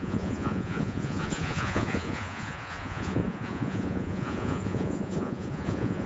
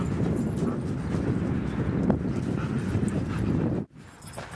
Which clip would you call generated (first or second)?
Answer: first